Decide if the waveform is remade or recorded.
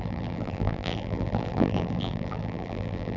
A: remade